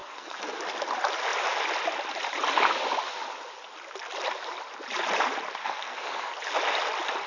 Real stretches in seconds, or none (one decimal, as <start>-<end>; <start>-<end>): 0.6-5.6; 6.3-7.3